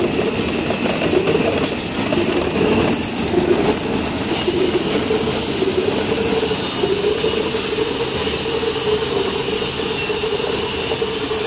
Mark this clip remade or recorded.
recorded